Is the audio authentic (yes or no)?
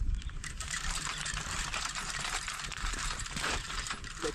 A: no